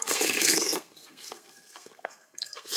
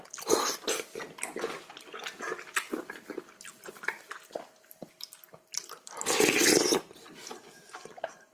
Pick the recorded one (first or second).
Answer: second